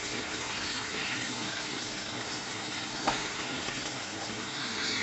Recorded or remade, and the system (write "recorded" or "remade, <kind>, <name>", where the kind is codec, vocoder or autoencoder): remade, codec, SNAC